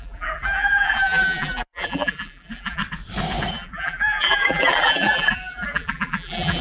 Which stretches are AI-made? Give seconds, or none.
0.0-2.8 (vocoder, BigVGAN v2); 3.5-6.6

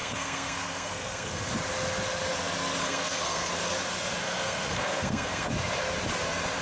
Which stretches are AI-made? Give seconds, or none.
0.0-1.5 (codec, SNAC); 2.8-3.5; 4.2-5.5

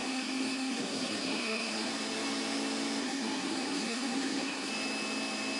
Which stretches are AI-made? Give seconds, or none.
0.0-1.9 (codec, SNAC); 3.0-4.7

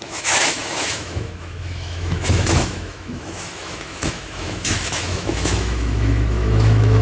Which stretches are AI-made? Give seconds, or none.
0.0-7.0 (autoencoder, DAC-VAE)